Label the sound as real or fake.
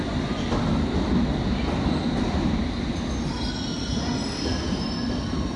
real